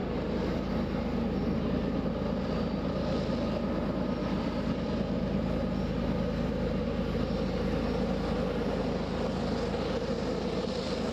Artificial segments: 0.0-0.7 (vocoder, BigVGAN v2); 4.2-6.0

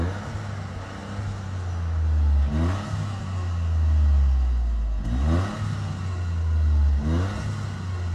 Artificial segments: none

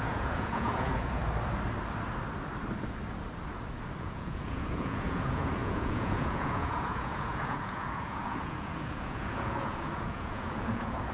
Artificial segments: 0.0-1.2 (vocoder, Vocos); 4.0-11.1

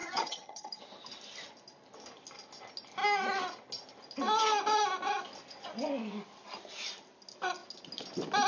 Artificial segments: 0.0-0.8 (vocoder, HiFi-GAN)

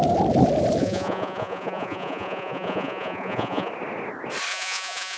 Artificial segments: 0.8-3.7 (vocoder, Vocos); 4.5-5.2

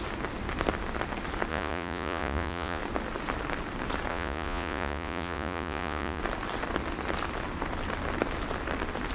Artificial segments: 1.5-2.8 (vocoder, Vocos); 4.1-6.2

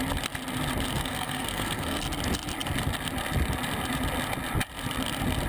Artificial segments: 1.0-2.0 (codec, SNAC)

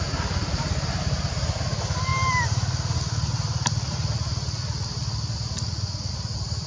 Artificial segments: none